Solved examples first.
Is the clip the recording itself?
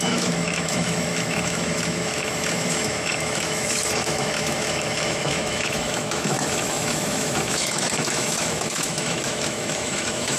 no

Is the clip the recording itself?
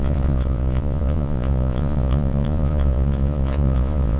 no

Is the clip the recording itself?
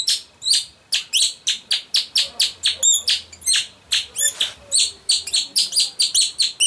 yes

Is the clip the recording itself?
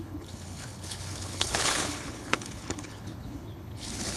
no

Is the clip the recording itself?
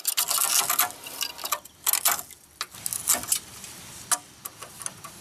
yes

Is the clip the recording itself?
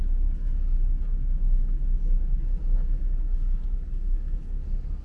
yes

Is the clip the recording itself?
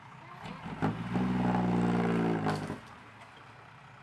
yes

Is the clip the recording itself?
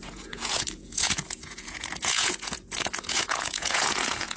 no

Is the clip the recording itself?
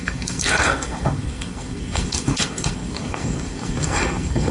no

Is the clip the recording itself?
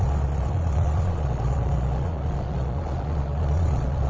no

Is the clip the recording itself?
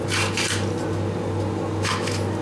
yes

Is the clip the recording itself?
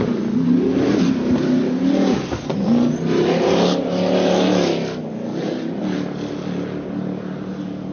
yes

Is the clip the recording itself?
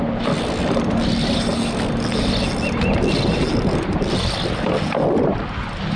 yes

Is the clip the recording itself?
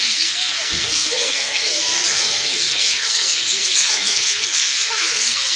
no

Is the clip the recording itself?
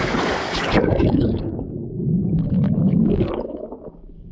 no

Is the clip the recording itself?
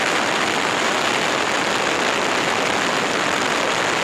yes